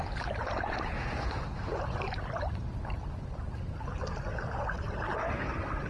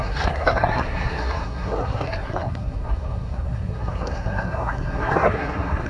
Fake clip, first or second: second